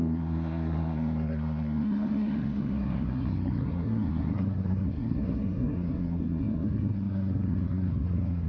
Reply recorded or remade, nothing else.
remade